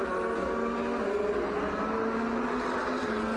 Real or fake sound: real